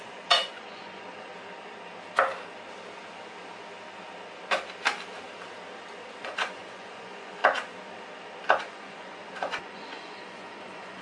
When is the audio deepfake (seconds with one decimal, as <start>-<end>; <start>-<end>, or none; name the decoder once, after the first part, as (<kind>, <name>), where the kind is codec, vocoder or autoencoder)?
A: 0.0-1.3 (vocoder, Vocos); 6.2-7.4; 8.6-11.0